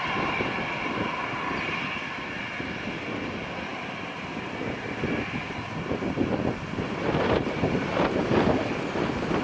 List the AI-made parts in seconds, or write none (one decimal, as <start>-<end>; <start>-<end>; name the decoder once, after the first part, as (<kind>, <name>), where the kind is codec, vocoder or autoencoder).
none